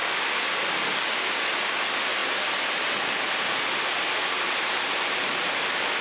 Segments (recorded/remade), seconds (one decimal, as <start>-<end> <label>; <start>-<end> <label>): 0.0-0.5 remade; 0.5-0.9 recorded; 0.9-1.5 remade; 1.5-6.0 recorded